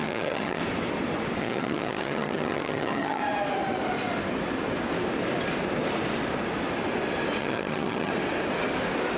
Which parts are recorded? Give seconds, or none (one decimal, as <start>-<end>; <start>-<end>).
0.6-1.4; 3.2-7.4; 8.1-9.2